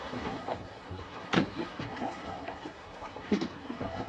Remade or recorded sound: remade